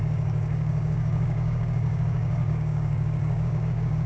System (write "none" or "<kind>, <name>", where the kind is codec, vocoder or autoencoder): codec, DAC